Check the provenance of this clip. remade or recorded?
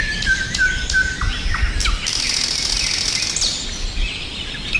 recorded